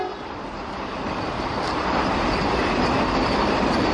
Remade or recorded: recorded